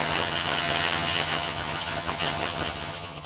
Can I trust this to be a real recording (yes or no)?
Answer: no